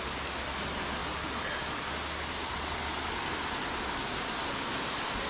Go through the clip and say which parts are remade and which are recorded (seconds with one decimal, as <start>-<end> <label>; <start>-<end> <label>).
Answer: 0.0-5.3 recorded